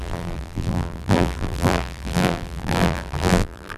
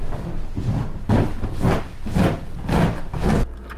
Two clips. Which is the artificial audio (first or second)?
first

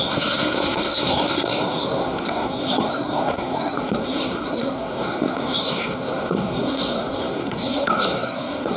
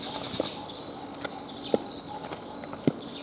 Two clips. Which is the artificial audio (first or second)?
first